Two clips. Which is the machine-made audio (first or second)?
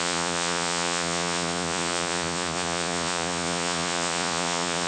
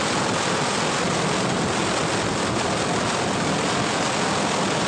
first